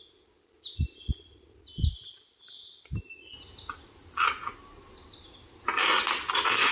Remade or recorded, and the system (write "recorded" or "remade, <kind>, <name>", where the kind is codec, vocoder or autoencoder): recorded